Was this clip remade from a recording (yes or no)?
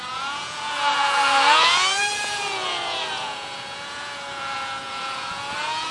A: yes